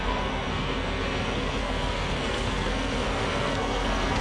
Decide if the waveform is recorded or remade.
remade